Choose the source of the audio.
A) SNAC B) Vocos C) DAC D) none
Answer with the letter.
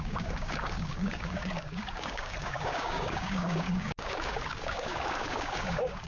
C